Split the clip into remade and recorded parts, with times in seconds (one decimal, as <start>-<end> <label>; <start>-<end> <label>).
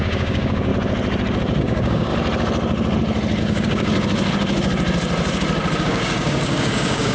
0.0-0.7 remade; 0.7-1.6 recorded; 1.6-2.1 remade; 2.1-3.4 recorded; 3.4-3.9 remade; 3.9-5.8 recorded; 5.8-7.1 remade